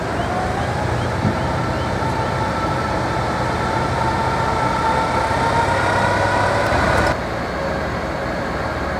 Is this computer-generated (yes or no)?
no